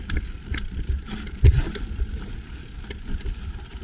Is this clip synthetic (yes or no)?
yes